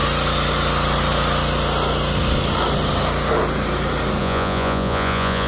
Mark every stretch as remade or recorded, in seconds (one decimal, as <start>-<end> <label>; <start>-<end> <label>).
0.0-4.2 recorded; 4.2-5.5 remade